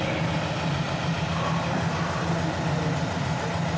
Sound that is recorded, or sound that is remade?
recorded